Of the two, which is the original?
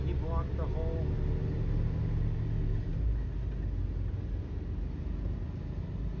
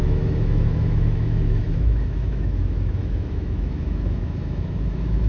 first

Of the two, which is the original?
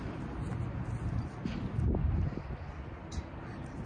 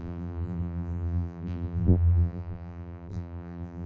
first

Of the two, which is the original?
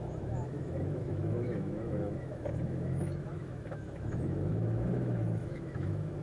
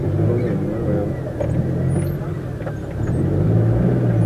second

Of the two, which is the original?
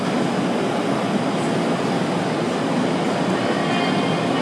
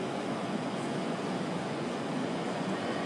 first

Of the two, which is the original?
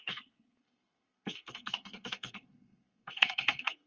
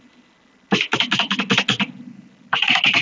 second